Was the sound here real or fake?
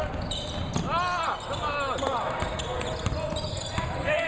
real